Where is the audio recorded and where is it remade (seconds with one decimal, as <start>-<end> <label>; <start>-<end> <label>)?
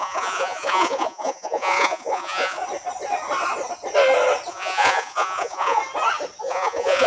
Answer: 0.0-2.6 remade; 2.6-4.5 recorded; 4.5-5.8 remade; 5.8-6.4 recorded; 6.4-7.1 remade